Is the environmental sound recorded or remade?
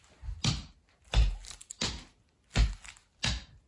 recorded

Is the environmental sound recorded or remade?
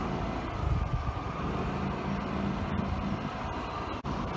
recorded